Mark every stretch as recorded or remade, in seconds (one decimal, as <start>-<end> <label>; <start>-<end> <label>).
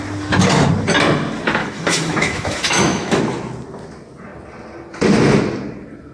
0.0-1.6 recorded; 1.6-3.2 remade; 3.2-6.1 recorded